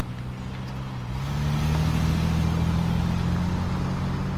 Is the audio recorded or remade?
recorded